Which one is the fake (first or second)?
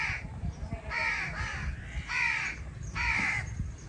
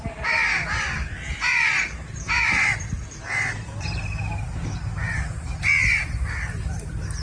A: first